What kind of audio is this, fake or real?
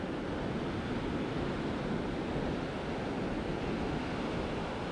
real